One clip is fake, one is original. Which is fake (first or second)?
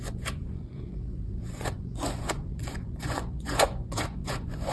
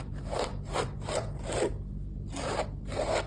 first